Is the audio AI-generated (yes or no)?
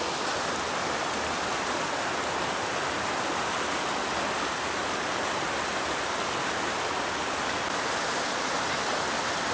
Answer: no